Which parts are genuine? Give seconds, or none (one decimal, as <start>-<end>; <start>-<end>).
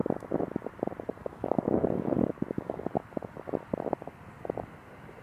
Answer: 0.0-1.2; 2.8-5.2